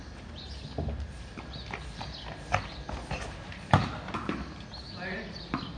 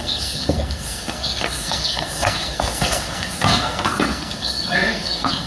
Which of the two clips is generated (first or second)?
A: second